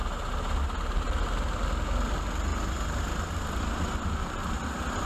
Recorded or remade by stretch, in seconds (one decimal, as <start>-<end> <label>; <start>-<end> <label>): 0.0-5.1 recorded